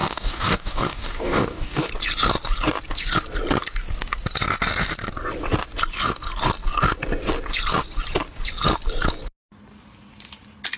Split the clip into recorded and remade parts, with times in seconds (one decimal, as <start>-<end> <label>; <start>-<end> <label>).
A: 0.0-1.9 remade; 1.9-10.8 recorded